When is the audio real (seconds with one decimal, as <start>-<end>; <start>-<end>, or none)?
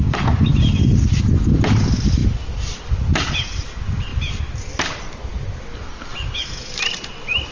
0.0-7.5